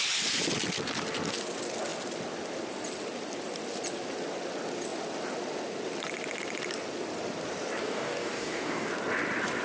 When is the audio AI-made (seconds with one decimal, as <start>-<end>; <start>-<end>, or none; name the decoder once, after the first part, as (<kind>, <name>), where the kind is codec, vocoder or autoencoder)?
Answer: 7.8-8.9 (codec, DAC)